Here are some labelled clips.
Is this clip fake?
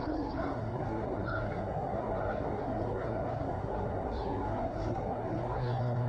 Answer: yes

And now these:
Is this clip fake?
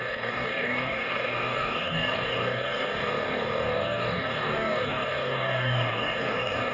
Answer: yes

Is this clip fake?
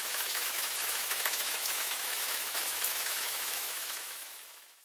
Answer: yes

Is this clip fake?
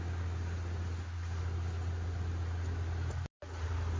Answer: no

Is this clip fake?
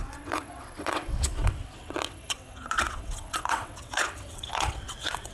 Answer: yes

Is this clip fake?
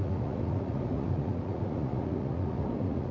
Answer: yes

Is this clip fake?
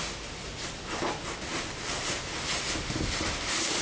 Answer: no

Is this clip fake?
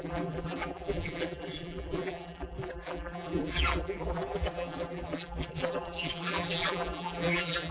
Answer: yes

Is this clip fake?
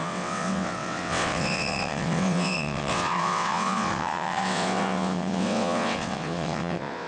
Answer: yes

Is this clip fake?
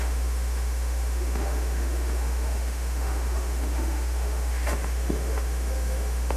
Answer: yes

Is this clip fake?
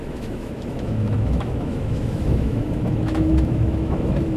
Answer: yes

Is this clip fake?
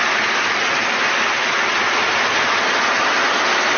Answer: no